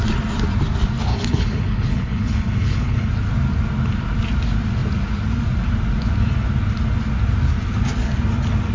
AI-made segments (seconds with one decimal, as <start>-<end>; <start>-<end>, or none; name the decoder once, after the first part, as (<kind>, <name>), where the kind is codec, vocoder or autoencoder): 1.1-3.1 (codec, HILCodec)